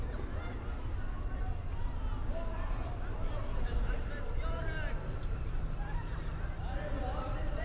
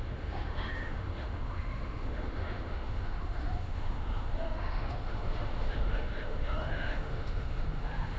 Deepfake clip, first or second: second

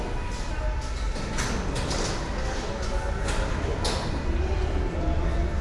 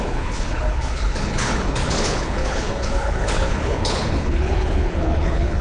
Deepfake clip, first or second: second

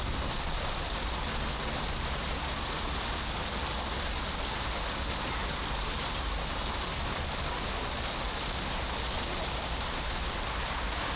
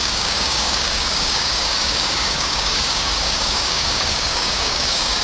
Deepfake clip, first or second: second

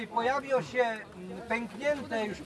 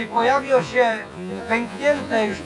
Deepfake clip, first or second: second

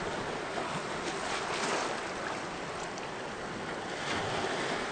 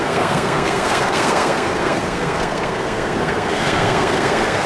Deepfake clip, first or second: second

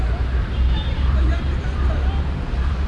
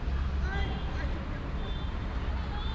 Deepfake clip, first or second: first